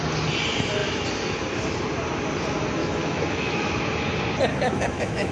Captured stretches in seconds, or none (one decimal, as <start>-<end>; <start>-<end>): 0.0-2.8; 3.9-4.5